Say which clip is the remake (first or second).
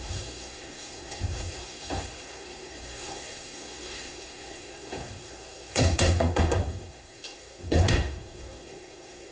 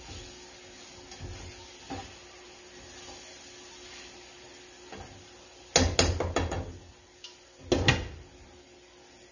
first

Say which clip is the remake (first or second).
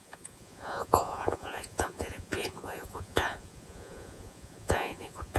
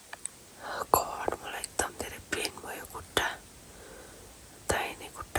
first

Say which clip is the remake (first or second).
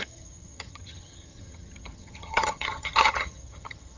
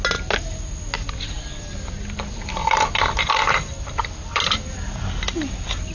first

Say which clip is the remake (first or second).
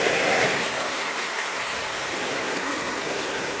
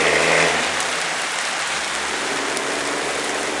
first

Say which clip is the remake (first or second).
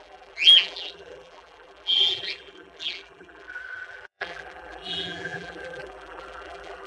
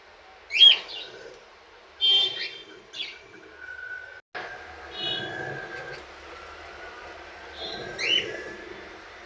first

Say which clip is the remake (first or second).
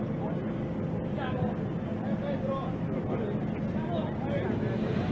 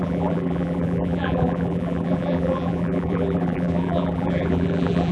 second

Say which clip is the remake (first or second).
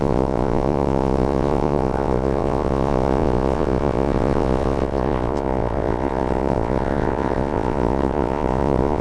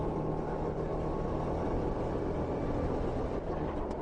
first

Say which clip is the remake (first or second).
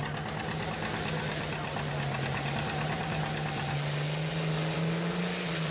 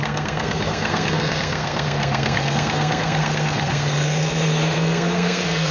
second